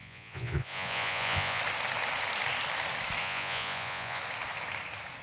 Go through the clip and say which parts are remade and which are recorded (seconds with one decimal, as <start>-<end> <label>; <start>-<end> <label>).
0.0-1.6 remade; 1.6-3.2 recorded; 3.2-4.2 remade; 4.2-5.2 recorded

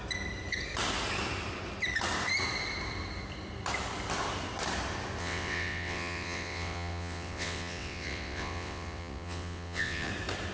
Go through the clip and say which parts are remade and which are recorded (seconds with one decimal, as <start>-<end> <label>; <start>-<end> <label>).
0.0-5.2 recorded; 5.2-10.1 remade; 10.1-10.5 recorded

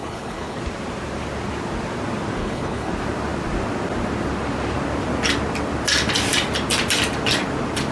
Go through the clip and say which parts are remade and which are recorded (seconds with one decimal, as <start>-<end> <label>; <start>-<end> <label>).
0.0-0.6 remade; 0.6-2.4 recorded; 2.4-2.9 remade; 2.9-7.9 recorded

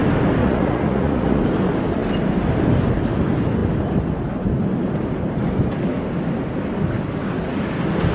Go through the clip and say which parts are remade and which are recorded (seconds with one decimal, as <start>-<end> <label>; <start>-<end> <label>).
0.0-0.4 recorded; 0.4-1.4 remade; 1.4-8.1 recorded